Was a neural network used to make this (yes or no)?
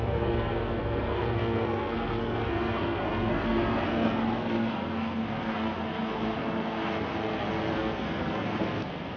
yes